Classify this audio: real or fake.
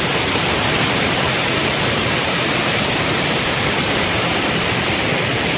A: fake